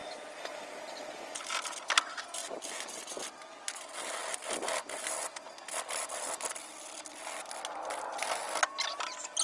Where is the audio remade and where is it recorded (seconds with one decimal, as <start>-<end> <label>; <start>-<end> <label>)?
0.0-9.4 recorded